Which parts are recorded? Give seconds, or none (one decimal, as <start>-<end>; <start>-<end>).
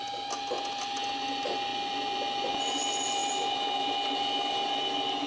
0.0-5.3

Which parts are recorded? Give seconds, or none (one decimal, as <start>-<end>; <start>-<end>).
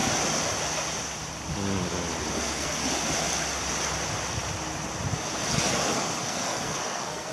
0.0-2.3; 2.8-5.5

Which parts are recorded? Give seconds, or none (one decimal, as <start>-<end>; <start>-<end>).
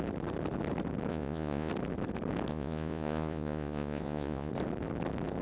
0.0-1.1; 1.7-2.5; 4.5-5.4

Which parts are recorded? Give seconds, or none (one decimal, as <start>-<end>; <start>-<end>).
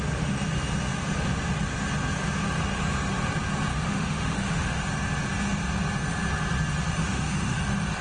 0.0-3.7; 4.8-7.0; 7.6-8.0